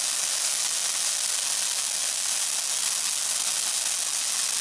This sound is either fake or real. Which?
real